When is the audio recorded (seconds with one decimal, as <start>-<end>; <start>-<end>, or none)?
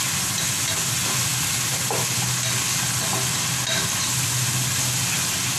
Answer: 0.0-5.6